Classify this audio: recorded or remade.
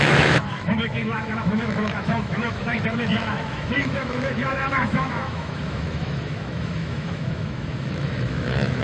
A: remade